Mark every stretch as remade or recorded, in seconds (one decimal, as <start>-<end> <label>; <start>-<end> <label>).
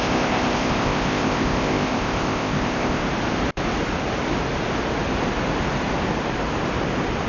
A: 0.0-3.0 remade; 3.0-7.3 recorded